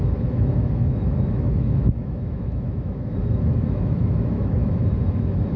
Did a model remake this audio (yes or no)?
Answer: yes